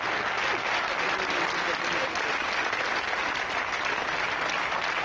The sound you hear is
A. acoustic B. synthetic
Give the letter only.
A